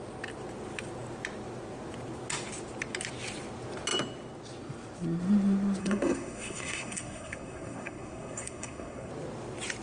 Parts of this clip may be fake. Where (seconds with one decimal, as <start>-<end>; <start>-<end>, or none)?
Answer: 5.8-9.1